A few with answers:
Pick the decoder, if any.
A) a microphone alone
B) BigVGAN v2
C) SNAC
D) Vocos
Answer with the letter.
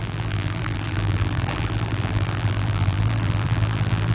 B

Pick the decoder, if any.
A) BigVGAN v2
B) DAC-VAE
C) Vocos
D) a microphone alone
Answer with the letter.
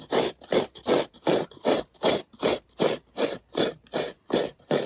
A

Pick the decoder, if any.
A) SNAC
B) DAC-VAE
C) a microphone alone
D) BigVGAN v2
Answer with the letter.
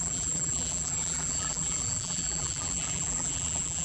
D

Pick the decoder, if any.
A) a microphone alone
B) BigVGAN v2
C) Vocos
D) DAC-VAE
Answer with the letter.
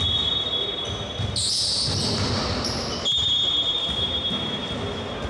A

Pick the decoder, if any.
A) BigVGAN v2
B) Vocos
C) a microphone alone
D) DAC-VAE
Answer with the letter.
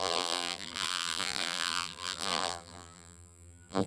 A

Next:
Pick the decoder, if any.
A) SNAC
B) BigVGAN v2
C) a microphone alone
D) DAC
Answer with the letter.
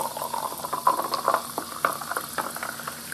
C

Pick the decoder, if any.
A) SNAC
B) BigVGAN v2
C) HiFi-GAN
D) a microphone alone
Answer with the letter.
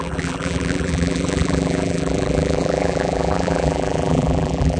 B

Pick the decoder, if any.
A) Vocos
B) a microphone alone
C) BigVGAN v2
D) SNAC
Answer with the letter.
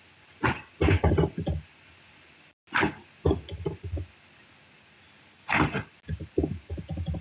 B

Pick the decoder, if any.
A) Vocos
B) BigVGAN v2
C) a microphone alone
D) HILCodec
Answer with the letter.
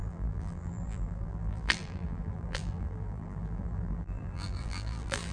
B